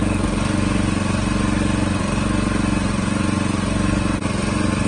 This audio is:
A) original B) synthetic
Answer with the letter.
A